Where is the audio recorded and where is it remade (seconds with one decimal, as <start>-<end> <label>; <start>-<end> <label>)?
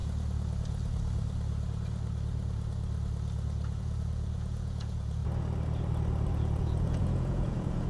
0.0-3.8 recorded; 3.8-5.2 remade; 5.2-6.3 recorded; 6.3-7.9 remade